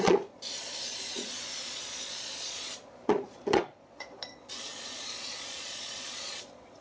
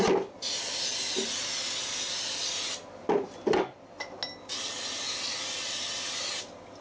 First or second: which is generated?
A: first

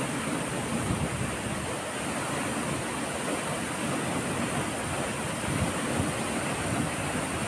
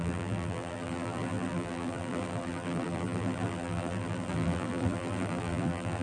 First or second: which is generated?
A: second